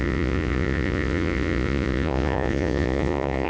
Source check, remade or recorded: remade